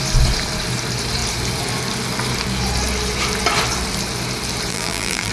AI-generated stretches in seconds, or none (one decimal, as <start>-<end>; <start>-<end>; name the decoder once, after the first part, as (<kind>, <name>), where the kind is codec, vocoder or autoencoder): 4.7-5.3 (vocoder, BigVGAN v2)